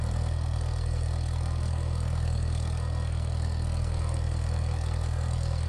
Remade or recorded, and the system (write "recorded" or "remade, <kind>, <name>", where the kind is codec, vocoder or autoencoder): remade, codec, SNAC